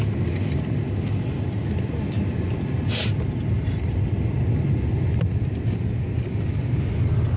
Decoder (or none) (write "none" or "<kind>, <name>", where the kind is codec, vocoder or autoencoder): none